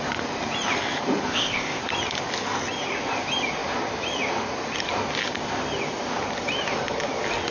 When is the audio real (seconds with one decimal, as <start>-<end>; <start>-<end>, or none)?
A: 0.0-1.3; 1.8-7.5